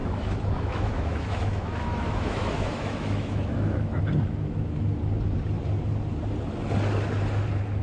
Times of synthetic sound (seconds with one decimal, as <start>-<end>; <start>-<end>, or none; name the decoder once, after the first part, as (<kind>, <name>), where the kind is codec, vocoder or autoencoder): 0.0-4.0 (autoencoder, DAC-VAE)